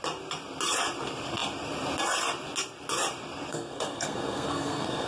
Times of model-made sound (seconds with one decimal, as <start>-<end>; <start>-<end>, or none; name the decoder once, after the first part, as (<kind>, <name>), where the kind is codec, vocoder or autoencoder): 3.5-5.1 (codec, SNAC)